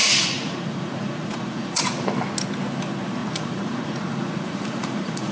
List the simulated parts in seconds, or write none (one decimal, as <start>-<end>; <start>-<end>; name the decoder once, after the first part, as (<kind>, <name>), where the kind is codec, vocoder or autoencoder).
0.0-1.8 (vocoder, Vocos); 3.2-5.3